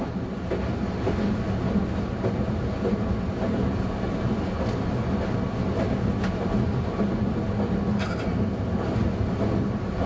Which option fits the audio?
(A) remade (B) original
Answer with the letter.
B